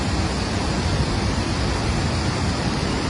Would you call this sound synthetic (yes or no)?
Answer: no